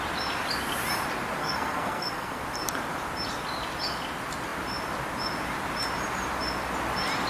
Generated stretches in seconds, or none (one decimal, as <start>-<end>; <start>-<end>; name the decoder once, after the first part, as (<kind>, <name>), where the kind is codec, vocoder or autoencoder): 1.4-2.4 (codec, SNAC)